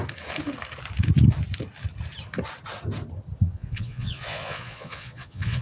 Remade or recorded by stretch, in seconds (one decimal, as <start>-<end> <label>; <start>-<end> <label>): 0.0-3.4 recorded; 3.4-5.6 remade